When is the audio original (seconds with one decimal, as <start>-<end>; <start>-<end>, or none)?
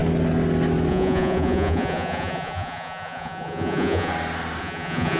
0.0-0.9; 4.1-4.6